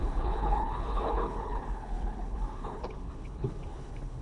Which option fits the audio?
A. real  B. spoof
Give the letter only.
B